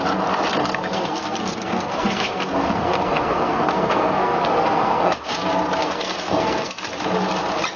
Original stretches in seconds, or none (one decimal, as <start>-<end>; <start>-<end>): 0.0-0.6; 5.3-5.8; 6.8-7.8